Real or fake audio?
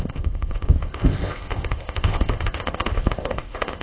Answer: fake